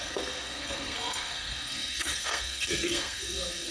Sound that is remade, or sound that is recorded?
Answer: remade